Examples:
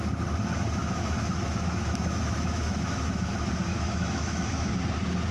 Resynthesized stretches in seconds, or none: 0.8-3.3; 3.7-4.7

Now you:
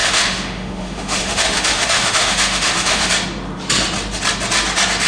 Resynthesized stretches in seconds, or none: 0.0-3.1